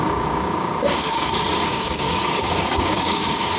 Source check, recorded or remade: remade